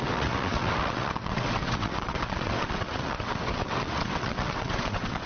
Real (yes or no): no